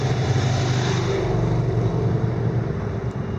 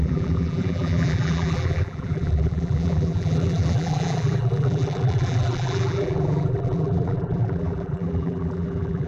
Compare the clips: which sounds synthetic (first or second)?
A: second